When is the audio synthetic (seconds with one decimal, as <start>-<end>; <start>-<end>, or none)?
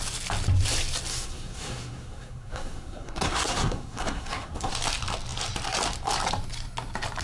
1.1-4.7